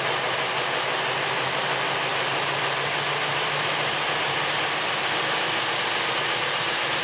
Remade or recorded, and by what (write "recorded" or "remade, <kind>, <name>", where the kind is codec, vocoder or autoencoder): recorded